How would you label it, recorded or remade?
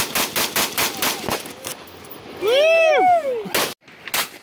recorded